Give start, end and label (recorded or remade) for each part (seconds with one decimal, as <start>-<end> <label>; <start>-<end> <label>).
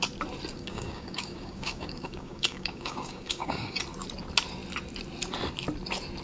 0.0-0.5 recorded; 0.5-3.8 remade; 3.8-6.2 recorded